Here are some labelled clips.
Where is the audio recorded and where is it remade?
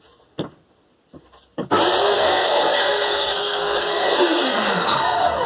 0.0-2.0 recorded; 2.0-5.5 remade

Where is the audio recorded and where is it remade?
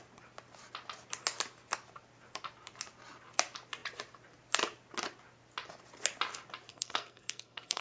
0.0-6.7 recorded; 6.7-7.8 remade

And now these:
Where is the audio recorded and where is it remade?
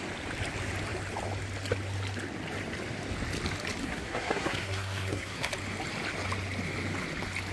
0.0-3.8 recorded; 3.8-5.5 remade; 5.5-7.5 recorded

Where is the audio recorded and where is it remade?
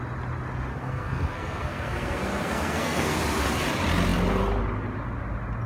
0.0-0.7 recorded; 0.7-3.2 remade; 3.2-5.7 recorded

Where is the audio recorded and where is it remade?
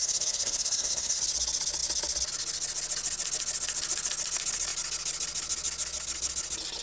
0.0-1.2 remade; 1.2-6.8 recorded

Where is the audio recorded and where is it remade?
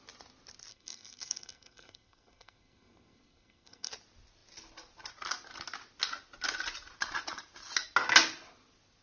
0.0-0.7 recorded; 0.7-3.9 remade; 3.9-9.0 recorded